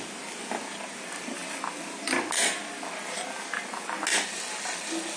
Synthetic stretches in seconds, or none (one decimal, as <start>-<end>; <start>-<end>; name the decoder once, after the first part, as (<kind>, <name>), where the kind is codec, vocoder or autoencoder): none